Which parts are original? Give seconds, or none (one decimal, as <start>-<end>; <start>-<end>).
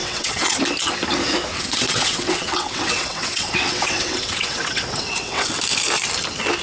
0.6-1.5; 5.5-6.6